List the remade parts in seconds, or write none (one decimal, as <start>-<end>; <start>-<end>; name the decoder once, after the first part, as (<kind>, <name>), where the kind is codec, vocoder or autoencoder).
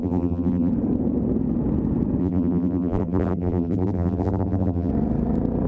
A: 0.0-0.7 (vocoder, BigVGAN v2); 2.2-4.9